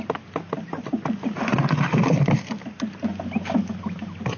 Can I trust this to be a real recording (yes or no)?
yes